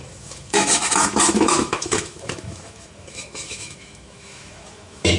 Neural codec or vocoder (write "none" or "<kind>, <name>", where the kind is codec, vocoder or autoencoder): autoencoder, DAC-VAE